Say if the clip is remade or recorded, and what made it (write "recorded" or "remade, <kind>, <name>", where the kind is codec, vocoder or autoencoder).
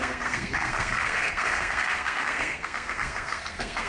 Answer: remade, codec, SNAC